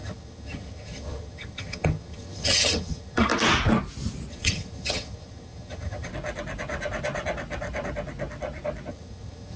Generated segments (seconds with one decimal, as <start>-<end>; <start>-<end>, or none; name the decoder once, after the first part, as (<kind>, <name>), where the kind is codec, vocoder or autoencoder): 0.0-3.3 (vocoder, HiFi-GAN); 4.3-6.1; 8.9-9.6